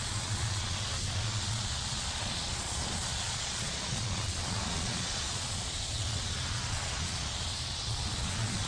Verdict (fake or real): fake